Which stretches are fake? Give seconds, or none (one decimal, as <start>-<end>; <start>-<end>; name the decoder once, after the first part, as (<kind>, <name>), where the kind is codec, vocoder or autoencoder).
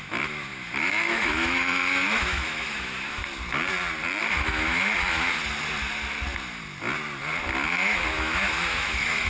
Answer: 0.0-3.2 (autoencoder, DAC-VAE); 4.2-5.4; 7.7-9.3